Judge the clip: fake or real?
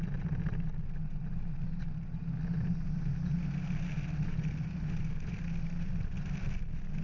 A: real